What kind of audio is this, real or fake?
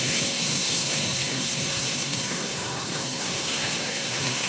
fake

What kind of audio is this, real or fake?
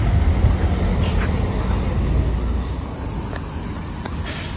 real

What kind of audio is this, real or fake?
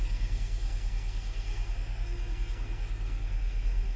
fake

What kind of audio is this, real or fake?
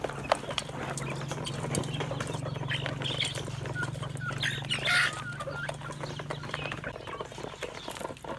real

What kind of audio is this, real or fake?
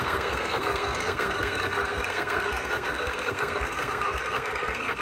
fake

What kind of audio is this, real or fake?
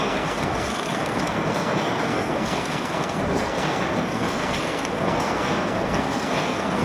fake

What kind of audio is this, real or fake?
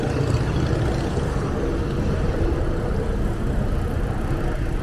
real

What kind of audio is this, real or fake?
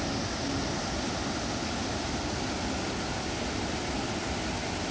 real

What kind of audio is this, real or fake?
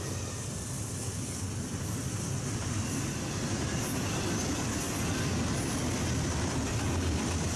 real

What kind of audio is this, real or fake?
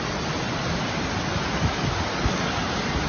real